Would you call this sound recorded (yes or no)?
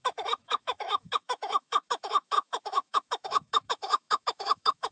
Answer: no